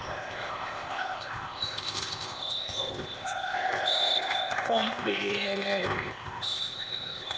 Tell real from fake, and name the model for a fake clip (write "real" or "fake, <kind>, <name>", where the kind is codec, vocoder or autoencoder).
fake, codec, ZipCodec